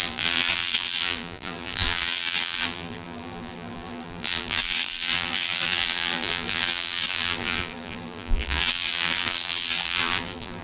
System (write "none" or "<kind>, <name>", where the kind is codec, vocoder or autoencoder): vocoder, BigVGAN v2